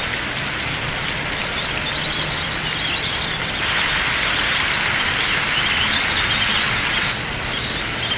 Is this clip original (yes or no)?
yes